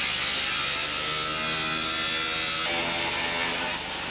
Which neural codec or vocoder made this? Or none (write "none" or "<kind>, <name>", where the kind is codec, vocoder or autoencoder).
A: none